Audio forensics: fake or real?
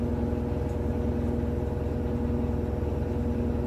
real